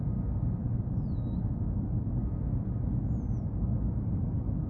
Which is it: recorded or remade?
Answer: recorded